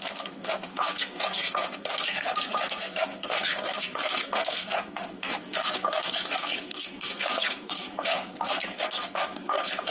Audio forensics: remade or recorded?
remade